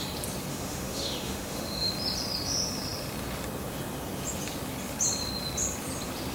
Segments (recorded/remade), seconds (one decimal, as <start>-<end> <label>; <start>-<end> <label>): 0.0-0.5 recorded; 0.5-1.9 remade; 1.9-6.3 recorded